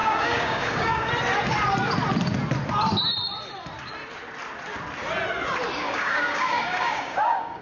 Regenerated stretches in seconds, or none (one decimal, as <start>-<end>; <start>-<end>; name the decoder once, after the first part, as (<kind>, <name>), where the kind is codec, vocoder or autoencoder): 0.0-1.1 (codec, DAC); 5.8-7.6